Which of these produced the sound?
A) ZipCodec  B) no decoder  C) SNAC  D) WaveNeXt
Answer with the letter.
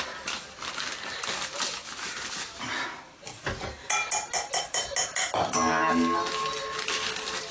B